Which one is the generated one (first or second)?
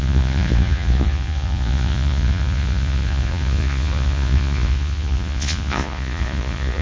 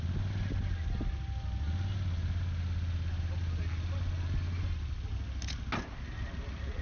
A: first